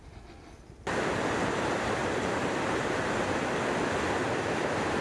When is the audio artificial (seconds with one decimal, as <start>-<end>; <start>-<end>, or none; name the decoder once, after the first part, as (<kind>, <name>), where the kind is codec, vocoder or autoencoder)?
2.0-3.1 (vocoder, BigVGAN v2)